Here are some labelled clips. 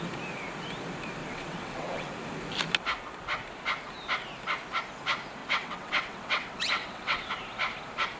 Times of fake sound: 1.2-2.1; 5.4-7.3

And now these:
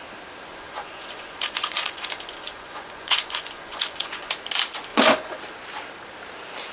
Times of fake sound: 0.5-4.3; 4.9-5.4

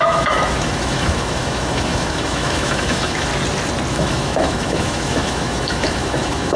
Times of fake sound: 0.0-3.3; 3.9-6.6

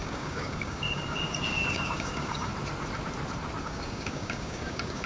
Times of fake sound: 0.0-2.5; 3.6-5.1

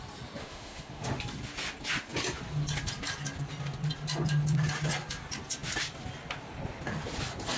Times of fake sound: 0.4-1.2

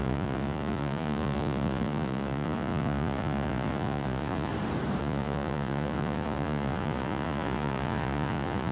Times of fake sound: 0.0-4.5; 5.0-8.7

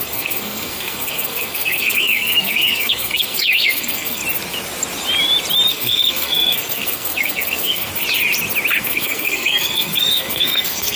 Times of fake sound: 0.0-4.2; 5.7-7.9; 8.8-11.0

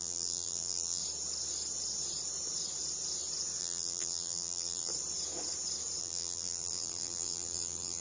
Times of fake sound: 0.0-1.0; 3.6-4.9; 6.0-8.0